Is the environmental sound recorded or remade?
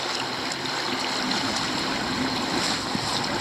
recorded